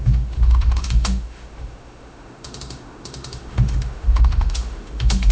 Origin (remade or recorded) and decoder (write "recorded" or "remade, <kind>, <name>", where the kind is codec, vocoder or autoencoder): remade, autoencoder, DAC-VAE